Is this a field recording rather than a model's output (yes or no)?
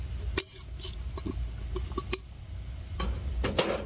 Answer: yes